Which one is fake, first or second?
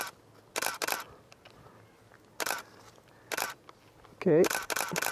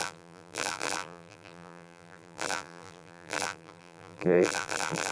second